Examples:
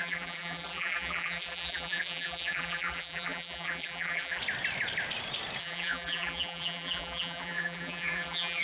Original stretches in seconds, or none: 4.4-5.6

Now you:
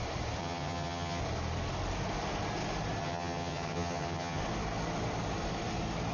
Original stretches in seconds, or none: 0.0-0.4; 1.2-3.0; 4.4-6.1

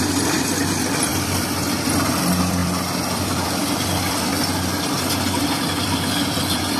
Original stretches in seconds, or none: 4.3-5.4

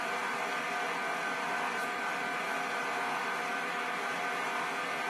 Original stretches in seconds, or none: 0.0-1.4; 2.1-3.1; 4.2-5.1